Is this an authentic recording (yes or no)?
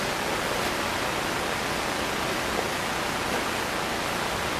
yes